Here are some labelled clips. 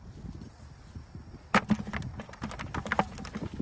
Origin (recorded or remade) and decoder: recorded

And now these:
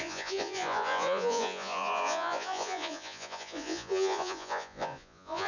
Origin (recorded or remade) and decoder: remade, vocoder, Vocos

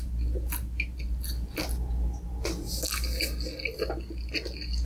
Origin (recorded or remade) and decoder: recorded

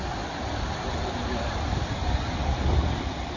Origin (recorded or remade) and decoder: recorded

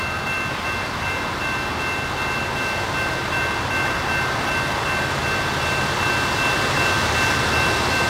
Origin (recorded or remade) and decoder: recorded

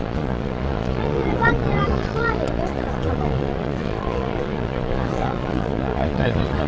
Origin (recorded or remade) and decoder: remade, vocoder, Vocos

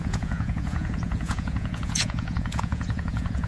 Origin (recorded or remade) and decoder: remade, vocoder, Vocos